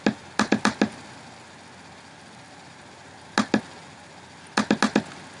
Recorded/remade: recorded